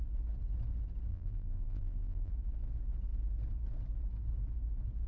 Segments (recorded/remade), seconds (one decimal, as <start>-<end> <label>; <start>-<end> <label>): 0.0-1.1 recorded; 1.1-2.3 remade; 2.3-5.1 recorded